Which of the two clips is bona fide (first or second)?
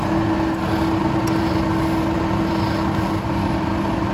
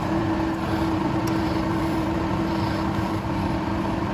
first